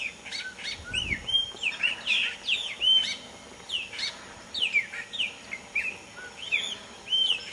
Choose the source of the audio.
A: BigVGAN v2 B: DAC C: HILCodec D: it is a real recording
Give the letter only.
D